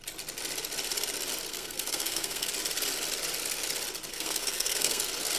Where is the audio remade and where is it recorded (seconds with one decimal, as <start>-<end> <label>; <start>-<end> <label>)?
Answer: 0.0-1.5 recorded; 1.5-2.5 remade; 2.5-4.1 recorded; 4.1-5.0 remade; 5.0-5.4 recorded